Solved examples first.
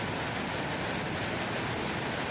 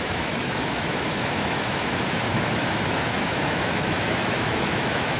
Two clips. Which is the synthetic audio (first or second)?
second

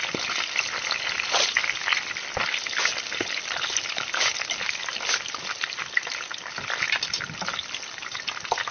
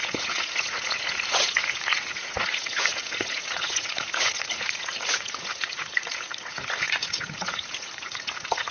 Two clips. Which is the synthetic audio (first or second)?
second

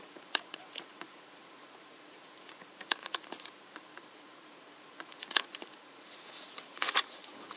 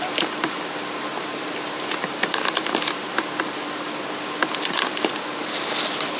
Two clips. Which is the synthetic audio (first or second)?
first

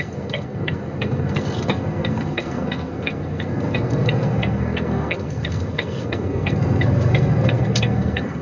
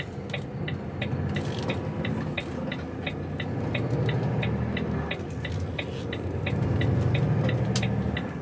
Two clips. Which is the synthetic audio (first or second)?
first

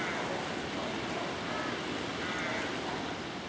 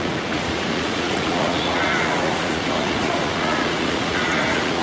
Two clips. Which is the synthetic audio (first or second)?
second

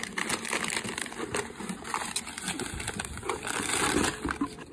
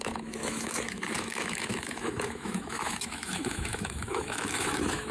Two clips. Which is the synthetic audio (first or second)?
second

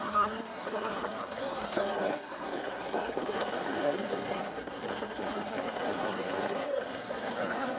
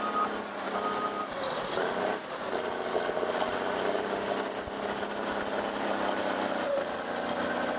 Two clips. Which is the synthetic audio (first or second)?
first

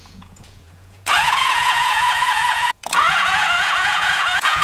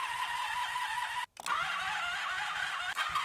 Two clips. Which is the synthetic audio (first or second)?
first